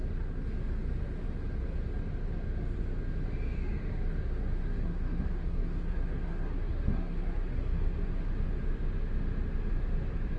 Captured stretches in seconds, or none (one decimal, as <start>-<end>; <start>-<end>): 0.0-4.6; 8.3-10.4